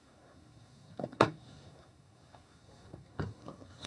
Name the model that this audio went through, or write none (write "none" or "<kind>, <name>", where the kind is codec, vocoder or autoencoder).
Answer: codec, SNAC